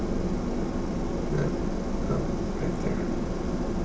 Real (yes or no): yes